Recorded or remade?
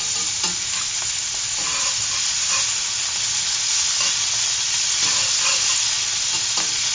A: recorded